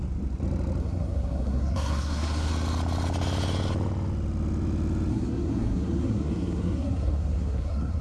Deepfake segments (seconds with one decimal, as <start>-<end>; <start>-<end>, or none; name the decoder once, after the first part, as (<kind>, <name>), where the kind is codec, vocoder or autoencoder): 0.8-2.5 (codec, SNAC); 5.1-8.0